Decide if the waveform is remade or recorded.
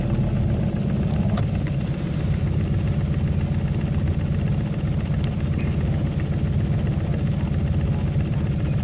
recorded